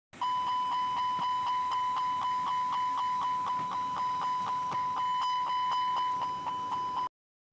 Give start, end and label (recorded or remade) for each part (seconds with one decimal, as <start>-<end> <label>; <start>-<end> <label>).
0.0-7.5 recorded